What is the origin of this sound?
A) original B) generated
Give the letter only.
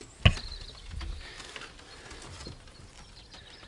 A